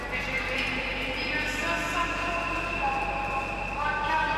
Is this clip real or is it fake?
real